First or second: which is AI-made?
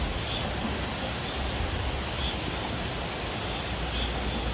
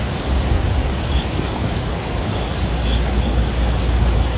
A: second